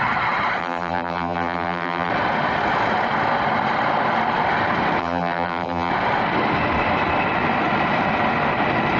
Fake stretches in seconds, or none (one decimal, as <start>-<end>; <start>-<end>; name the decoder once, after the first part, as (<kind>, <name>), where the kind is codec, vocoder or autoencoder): 0.6-2.1 (vocoder, BigVGAN v2); 5.0-5.9